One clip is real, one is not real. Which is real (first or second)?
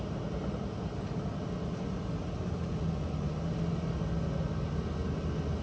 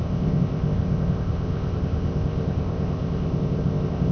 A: first